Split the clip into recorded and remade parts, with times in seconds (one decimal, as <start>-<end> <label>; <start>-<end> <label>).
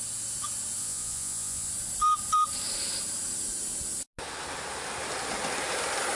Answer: 0.0-0.8 recorded; 0.8-1.7 remade; 1.7-6.2 recorded